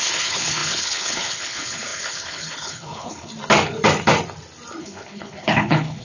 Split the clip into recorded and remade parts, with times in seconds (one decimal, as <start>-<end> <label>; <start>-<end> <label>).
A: 0.0-3.3 remade; 3.3-4.8 recorded; 4.8-6.0 remade